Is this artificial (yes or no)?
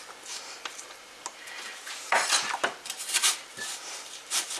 yes